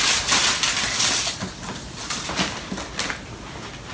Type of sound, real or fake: real